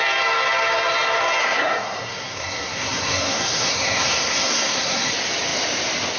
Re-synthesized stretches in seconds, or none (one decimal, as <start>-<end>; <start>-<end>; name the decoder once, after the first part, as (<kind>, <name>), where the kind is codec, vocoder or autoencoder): 1.4-5.1 (codec, SNAC)